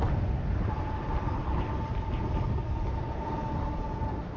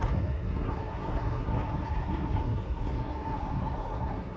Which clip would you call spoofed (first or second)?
second